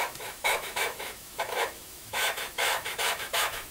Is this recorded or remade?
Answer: remade